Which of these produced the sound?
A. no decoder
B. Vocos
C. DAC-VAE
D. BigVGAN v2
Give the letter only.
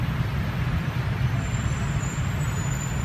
A